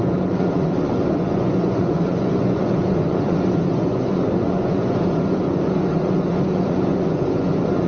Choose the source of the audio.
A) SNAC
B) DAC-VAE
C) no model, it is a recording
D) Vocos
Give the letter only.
D